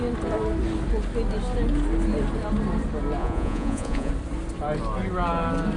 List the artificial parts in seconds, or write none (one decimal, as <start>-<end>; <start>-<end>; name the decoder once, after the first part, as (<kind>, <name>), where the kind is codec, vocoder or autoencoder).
3.2-4.1 (vocoder, Vocos)